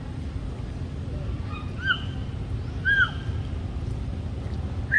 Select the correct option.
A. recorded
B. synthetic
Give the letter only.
A